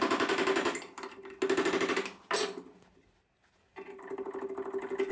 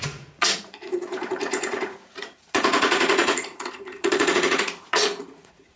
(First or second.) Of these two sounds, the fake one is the second